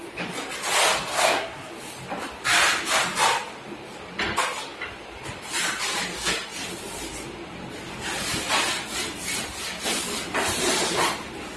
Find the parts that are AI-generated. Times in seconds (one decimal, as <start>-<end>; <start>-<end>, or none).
1.1-1.7